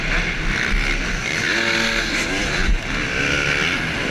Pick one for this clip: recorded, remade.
recorded